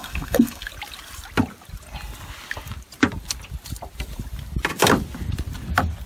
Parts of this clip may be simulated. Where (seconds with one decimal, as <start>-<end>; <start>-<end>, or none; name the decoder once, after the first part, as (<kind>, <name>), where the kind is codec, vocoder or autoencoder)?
0.0-0.7 (codec, SNAC)